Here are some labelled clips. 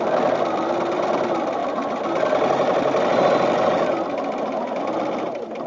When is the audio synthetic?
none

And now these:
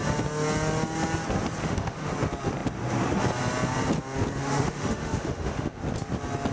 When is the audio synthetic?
1.6-2.1 (autoencoder, DAC-VAE); 4.4-5.8

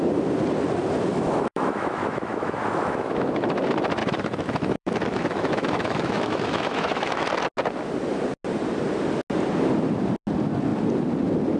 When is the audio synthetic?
1.1-3.6 (autoencoder, DAC-VAE); 4.0-7.3

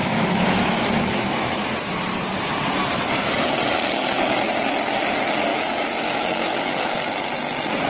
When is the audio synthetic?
0.0-1.5 (autoencoder, DAC-VAE); 5.5-7.1